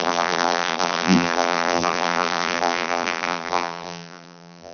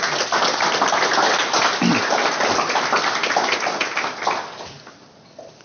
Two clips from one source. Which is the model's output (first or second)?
first